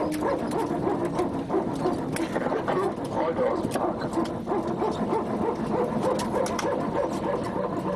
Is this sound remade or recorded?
recorded